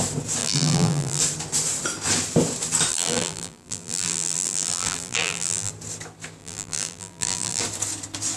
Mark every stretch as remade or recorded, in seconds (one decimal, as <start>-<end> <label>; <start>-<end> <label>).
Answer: 0.0-0.4 recorded; 0.4-1.2 remade; 1.2-2.9 recorded; 2.9-5.7 remade; 5.7-6.4 recorded; 6.4-7.6 remade; 7.6-8.4 recorded